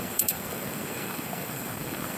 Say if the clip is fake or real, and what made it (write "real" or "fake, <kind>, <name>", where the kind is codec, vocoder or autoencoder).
fake, codec, SNAC